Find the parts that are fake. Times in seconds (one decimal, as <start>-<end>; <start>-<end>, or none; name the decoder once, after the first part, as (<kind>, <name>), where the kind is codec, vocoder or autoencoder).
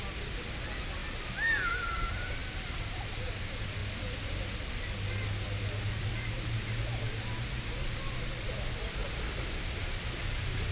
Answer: 0.0-1.0 (vocoder, BigVGAN v2); 1.7-3.8; 5.9-9.0